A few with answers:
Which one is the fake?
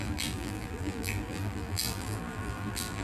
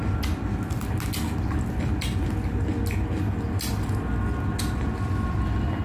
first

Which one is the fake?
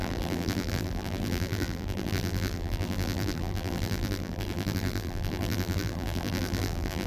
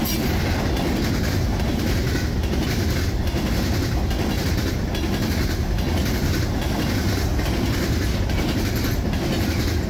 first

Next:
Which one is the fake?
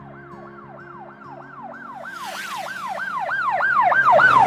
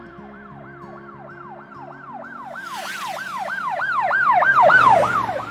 second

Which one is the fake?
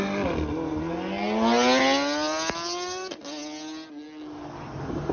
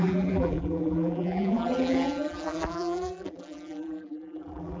second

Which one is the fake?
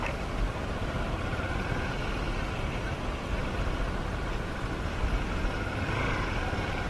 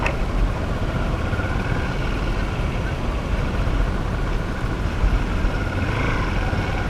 first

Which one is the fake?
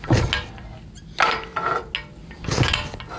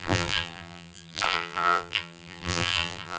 second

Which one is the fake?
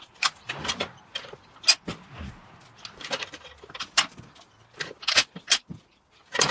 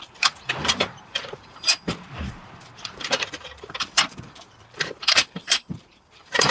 second